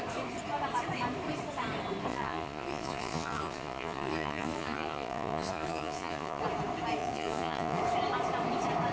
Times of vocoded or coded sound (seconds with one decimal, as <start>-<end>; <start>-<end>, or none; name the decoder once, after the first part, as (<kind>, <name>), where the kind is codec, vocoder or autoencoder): 2.1-6.4 (vocoder, Vocos); 7.0-7.8